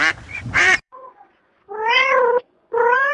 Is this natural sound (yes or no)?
no